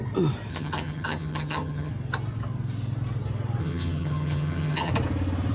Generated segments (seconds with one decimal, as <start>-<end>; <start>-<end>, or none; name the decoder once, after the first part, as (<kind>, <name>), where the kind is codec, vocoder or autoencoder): 0.5-1.9 (vocoder, HiFi-GAN); 3.6-4.9